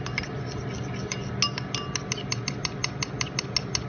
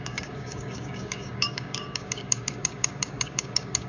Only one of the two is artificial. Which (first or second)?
second